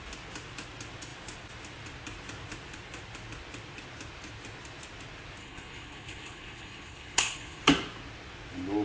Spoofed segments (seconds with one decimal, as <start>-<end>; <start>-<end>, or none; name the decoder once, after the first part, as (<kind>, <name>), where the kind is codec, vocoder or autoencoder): 5.4-7.6 (codec, HILCodec)